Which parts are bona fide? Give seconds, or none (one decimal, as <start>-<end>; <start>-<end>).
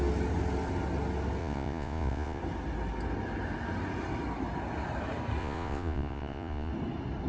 0.0-1.4; 2.4-5.4; 6.7-7.3